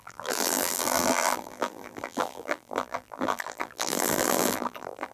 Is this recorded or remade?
remade